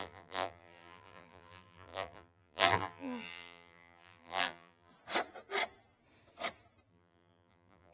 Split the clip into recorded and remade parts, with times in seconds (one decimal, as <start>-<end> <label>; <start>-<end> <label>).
0.0-4.9 remade; 4.9-6.9 recorded; 6.9-7.9 remade